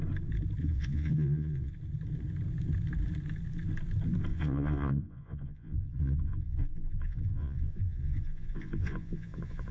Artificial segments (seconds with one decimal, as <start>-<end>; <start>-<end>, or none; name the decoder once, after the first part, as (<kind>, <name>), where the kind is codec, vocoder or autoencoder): 0.6-1.7 (vocoder, Vocos); 4.3-9.7